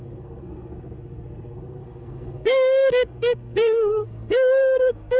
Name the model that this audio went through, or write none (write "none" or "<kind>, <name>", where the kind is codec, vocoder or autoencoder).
codec, SNAC